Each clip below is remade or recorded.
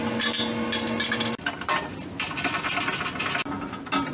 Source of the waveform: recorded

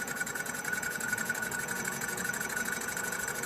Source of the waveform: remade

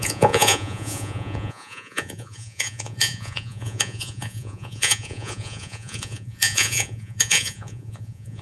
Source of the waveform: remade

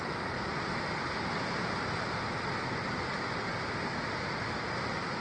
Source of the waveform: recorded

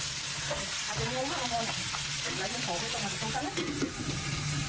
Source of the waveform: recorded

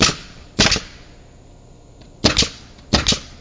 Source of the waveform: recorded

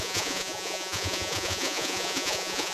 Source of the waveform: remade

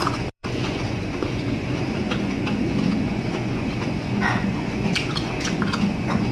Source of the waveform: remade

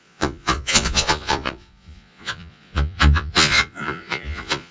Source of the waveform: remade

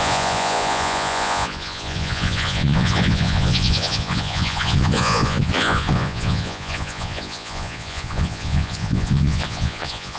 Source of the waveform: remade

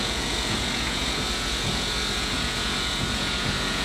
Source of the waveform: remade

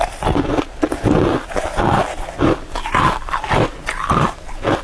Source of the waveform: recorded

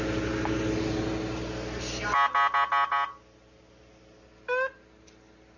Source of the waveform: recorded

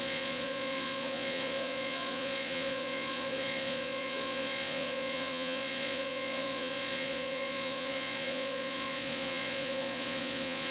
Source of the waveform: remade